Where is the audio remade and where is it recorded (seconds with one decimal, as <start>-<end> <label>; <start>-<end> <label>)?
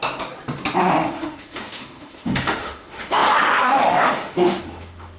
0.0-0.8 recorded; 0.8-5.2 remade